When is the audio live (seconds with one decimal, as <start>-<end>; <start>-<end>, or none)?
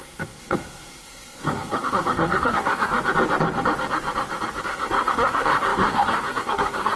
2.9-4.6